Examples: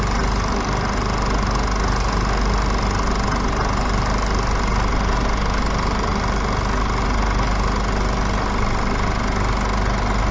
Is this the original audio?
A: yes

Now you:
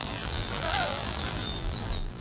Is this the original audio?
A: no